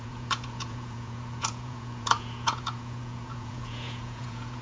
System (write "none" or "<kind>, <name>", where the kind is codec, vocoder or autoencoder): vocoder, Vocos